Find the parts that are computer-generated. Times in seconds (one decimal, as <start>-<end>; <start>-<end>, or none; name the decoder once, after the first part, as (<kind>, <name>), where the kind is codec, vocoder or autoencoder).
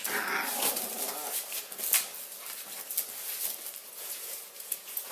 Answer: 3.8-5.1 (vocoder, Vocos)